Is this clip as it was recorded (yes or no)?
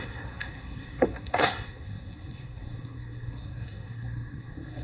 no